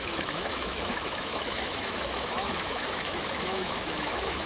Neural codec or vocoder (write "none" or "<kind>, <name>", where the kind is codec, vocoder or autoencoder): autoencoder, DAC-VAE